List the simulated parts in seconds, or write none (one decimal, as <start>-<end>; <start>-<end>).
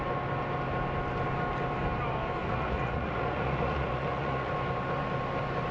2.4-4.5